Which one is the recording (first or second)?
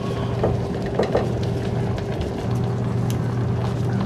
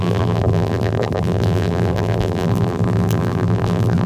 first